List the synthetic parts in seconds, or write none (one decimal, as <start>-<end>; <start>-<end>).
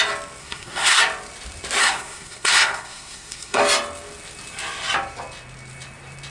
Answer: 0.4-1.0; 1.8-3.6